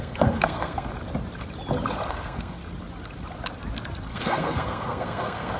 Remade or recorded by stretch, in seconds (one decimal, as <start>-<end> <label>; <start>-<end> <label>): 0.0-0.9 remade; 0.9-2.1 recorded; 2.1-2.6 remade; 2.6-4.1 recorded; 4.1-5.6 remade